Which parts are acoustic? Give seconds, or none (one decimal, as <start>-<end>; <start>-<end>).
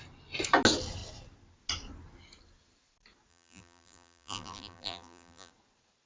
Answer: 0.0-3.3; 5.5-6.1